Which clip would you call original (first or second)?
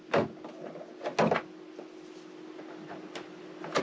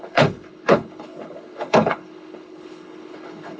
first